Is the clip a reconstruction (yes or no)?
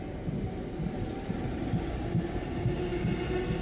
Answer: no